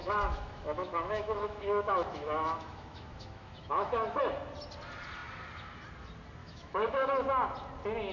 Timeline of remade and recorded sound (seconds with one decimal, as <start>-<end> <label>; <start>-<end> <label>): 0.0-4.2 remade; 4.2-6.4 recorded; 6.4-7.3 remade; 7.3-8.1 recorded